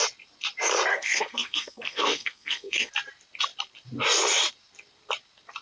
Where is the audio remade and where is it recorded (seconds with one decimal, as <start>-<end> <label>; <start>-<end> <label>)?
0.0-0.9 recorded; 0.9-2.9 remade; 2.9-5.6 recorded